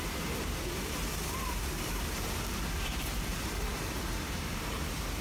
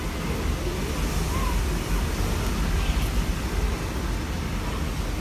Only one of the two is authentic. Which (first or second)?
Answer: second